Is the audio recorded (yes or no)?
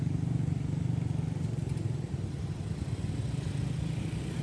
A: yes